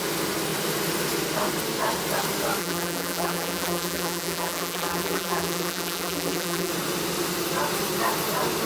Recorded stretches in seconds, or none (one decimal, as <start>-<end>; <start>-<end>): 0.0-2.6; 6.7-8.7